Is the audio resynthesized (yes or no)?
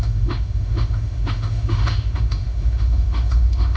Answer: yes